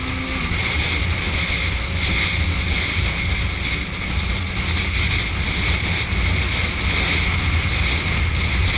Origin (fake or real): real